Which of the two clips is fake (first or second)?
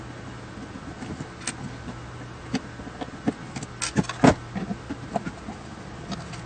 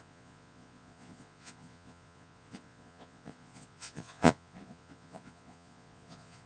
second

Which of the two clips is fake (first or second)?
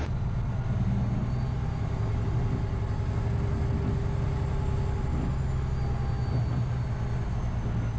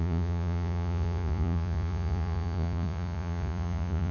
second